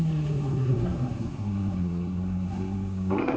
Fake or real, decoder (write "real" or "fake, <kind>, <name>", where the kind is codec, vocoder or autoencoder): fake, codec, SNAC